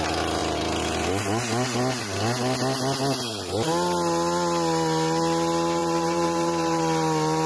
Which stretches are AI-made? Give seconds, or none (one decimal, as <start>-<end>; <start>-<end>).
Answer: 5.8-6.8